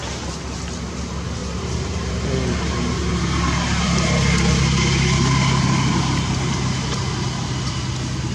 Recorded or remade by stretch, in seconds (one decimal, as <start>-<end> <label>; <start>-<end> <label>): 0.0-1.4 recorded; 1.4-2.1 remade; 2.1-8.3 recorded